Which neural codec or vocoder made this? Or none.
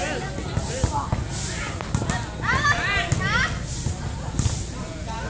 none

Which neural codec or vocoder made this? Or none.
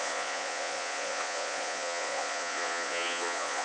vocoder, Vocos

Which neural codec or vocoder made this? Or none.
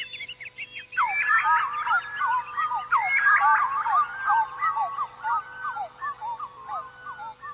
none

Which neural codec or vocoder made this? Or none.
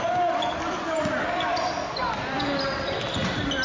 none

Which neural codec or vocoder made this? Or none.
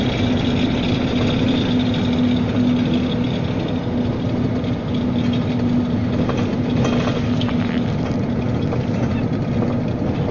none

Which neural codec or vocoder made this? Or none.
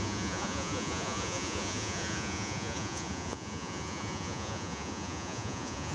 vocoder, Vocos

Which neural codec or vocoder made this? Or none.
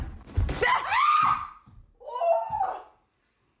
vocoder, BigVGAN v2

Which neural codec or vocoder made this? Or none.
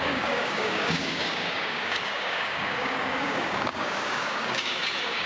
codec, DAC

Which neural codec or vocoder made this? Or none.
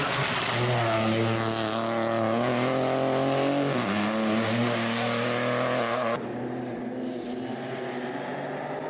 none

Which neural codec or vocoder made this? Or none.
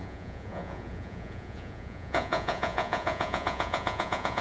vocoder, Vocos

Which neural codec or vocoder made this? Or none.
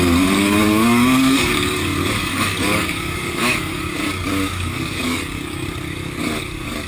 codec, DAC